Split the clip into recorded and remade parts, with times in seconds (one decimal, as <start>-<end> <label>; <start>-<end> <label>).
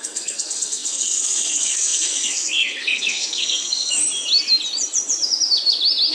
0.0-4.0 remade; 4.0-6.1 recorded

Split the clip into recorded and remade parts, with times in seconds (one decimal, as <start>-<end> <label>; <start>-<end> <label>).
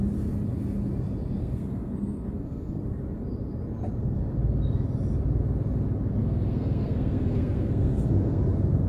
0.0-1.4 recorded; 1.4-2.8 remade; 2.8-6.2 recorded; 6.2-8.4 remade; 8.4-8.9 recorded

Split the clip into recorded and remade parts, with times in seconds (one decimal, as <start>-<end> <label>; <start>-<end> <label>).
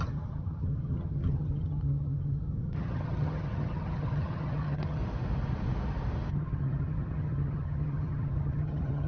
0.0-5.0 remade; 5.0-6.3 recorded; 6.3-9.1 remade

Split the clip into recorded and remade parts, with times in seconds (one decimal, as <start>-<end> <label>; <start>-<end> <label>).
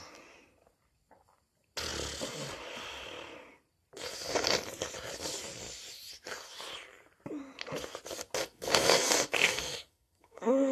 0.0-8.4 recorded; 8.4-10.7 remade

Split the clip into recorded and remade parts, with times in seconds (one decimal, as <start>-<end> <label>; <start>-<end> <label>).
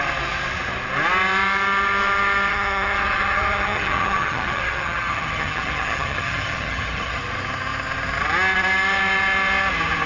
0.0-2.5 recorded; 2.5-7.2 remade; 7.2-10.1 recorded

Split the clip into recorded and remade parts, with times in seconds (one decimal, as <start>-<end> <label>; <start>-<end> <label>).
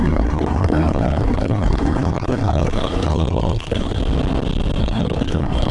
0.0-4.0 remade; 4.0-4.8 recorded; 4.8-5.7 remade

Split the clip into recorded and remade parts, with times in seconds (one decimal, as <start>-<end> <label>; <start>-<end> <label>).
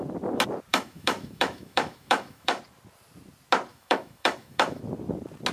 0.0-0.7 recorded; 0.7-2.6 remade; 2.6-3.7 recorded; 3.7-4.8 remade; 4.8-5.5 recorded